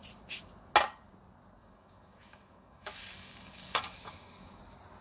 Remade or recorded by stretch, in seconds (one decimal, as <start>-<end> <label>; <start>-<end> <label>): 0.0-1.6 recorded; 1.6-4.6 remade; 4.6-5.0 recorded